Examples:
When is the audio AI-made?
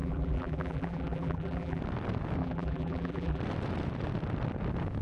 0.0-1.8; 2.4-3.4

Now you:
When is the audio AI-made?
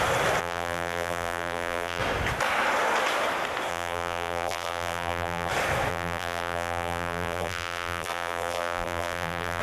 0.4-2.0; 3.7-5.5; 5.9-9.6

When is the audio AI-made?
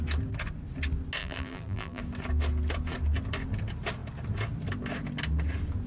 1.2-2.0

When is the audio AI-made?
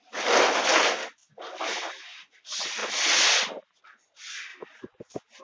none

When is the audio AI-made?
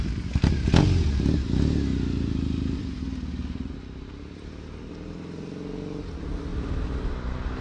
1.9-4.9; 6.5-7.6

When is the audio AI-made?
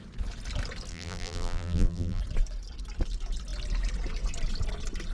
0.9-2.2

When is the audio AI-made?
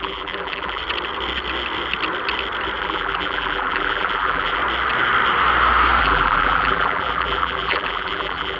0.0-0.8; 2.8-4.6; 6.0-8.6